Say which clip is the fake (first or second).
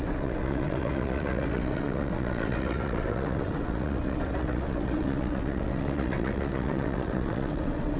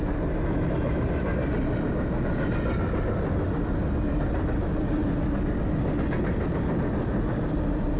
first